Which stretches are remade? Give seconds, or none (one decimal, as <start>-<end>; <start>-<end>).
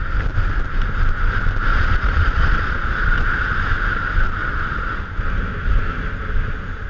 1.7-3.6; 4.4-5.0